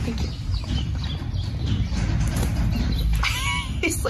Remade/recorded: recorded